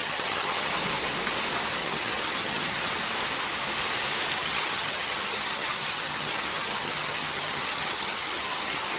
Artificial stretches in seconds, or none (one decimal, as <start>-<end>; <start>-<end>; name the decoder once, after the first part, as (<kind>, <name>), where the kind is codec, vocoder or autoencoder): 0.0-0.7 (vocoder, HiFi-GAN); 1.8-2.9; 4.4-9.0